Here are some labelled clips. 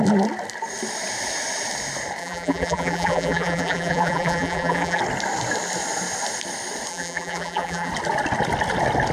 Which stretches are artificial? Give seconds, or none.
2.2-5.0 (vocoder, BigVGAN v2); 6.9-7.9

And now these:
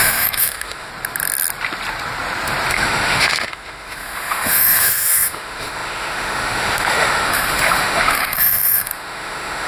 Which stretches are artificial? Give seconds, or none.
0.0-0.9 (autoencoder, DAC-VAE); 2.7-9.7